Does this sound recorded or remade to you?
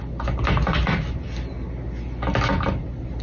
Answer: recorded